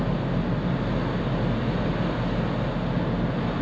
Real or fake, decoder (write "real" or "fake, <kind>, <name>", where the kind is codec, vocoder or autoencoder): real